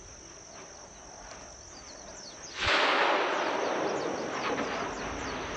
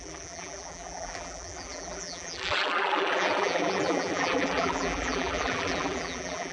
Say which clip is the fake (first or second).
second